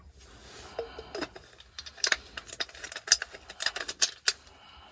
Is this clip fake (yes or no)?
no